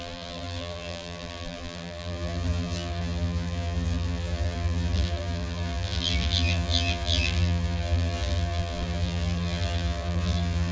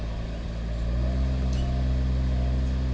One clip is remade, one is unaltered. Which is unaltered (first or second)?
second